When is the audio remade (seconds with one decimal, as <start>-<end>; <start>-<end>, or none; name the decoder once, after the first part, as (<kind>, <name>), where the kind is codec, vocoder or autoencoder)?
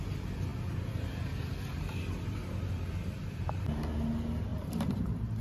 4.5-5.4 (vocoder, BigVGAN v2)